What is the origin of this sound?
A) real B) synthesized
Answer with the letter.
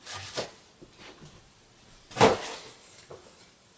A